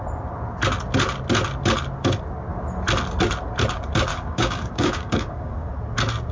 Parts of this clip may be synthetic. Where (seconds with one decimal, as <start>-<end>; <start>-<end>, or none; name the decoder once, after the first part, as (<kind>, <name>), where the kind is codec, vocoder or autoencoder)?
4.1-5.7 (codec, DAC)